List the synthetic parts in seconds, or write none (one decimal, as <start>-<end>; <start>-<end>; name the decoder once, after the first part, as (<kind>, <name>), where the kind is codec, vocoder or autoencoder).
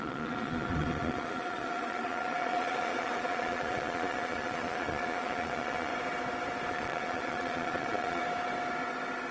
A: 0.0-5.9 (vocoder, Vocos); 6.7-8.2